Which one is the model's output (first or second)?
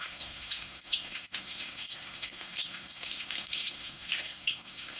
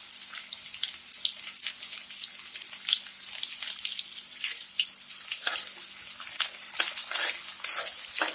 first